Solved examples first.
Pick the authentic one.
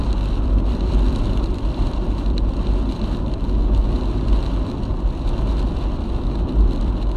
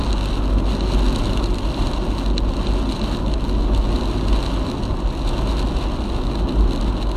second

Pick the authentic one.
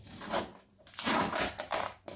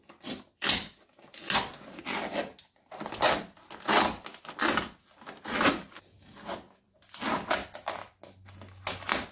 second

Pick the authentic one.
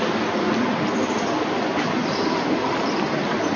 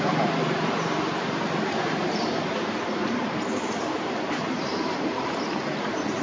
first